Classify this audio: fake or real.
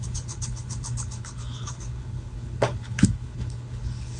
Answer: fake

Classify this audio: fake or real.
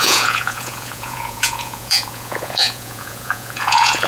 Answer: fake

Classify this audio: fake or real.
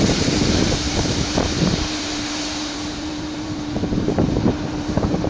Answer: fake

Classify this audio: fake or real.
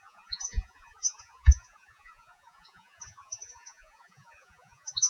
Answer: fake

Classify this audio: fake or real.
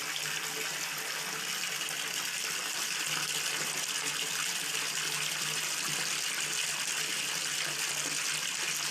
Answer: real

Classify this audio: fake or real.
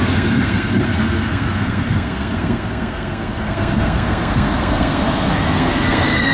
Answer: fake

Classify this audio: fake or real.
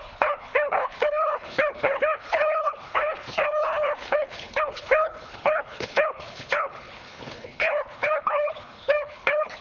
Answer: fake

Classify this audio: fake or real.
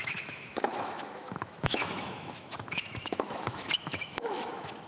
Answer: fake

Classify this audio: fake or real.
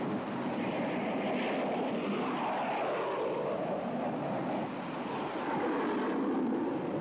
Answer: real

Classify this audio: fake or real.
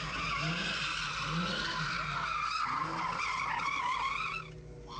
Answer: real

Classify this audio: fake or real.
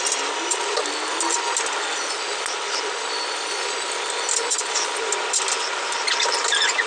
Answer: real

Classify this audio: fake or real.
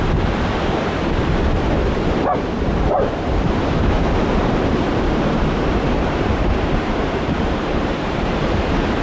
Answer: fake